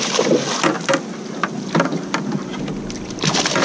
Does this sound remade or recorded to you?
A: recorded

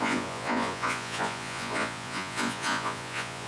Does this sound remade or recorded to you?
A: remade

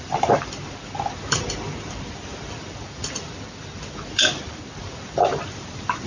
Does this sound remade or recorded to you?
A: remade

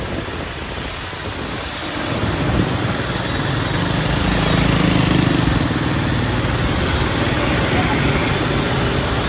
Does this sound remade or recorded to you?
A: recorded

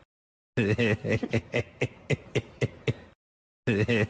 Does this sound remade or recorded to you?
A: recorded